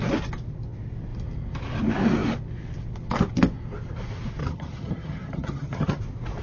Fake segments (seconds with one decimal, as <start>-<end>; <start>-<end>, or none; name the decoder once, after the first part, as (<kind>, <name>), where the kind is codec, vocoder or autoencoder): 4.4-6.0 (vocoder, HiFi-GAN)